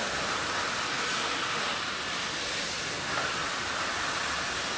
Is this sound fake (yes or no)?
no